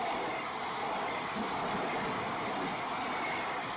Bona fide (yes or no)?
yes